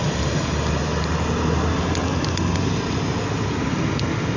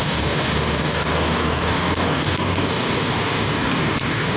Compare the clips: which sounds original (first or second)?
first